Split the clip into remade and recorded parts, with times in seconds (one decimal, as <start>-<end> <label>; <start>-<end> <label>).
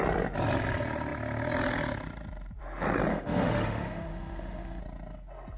0.0-3.1 recorded; 3.1-4.8 remade; 4.8-5.6 recorded